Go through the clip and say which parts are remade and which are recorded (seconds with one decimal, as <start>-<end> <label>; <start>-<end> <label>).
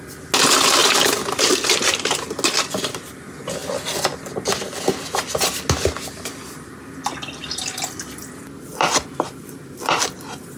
0.0-0.8 recorded; 0.8-1.4 remade; 1.4-8.7 recorded; 8.7-10.0 remade; 10.0-10.6 recorded